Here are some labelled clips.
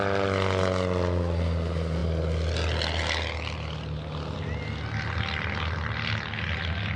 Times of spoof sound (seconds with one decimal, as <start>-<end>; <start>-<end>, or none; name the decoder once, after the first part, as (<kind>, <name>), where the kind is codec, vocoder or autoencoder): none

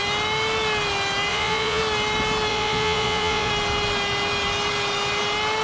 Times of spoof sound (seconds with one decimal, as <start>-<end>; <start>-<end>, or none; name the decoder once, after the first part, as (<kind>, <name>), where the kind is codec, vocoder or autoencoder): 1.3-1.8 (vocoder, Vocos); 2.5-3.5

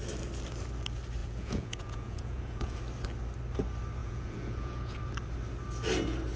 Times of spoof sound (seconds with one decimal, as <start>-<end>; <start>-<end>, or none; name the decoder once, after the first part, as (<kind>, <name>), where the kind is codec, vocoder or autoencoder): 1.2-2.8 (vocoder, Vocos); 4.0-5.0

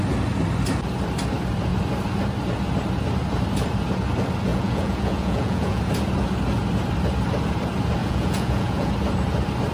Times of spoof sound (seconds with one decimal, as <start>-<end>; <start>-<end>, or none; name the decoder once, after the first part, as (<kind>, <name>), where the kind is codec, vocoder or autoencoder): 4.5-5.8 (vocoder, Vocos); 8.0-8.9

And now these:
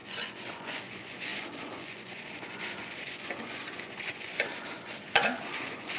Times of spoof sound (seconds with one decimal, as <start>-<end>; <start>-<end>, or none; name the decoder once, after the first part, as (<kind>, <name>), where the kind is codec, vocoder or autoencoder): 0.0-6.0 (vocoder, Vocos)

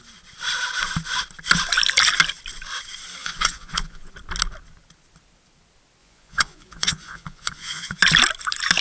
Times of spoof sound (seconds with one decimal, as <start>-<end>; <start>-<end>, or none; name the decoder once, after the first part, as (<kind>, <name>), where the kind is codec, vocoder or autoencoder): 3.2-4.1 (vocoder, Vocos); 6.0-8.0